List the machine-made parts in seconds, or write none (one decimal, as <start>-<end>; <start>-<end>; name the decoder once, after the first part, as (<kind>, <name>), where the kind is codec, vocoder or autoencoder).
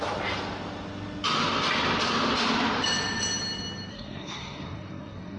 3.9-5.4 (codec, SNAC)